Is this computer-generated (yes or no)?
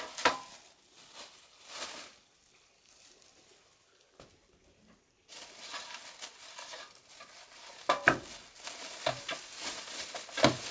no